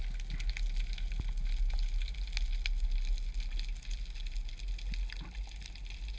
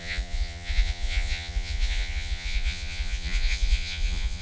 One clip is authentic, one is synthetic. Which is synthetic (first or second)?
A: second